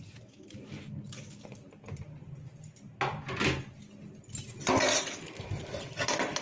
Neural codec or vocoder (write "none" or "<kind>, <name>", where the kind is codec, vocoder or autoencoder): none